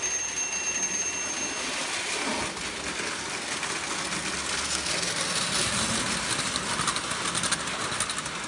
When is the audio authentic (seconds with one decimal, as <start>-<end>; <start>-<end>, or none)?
0.0-8.5